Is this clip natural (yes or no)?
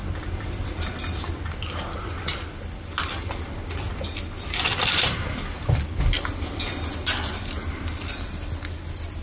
yes